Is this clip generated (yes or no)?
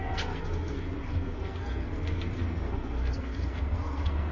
yes